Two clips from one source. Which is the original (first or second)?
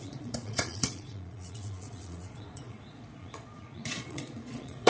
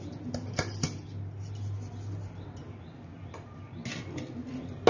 second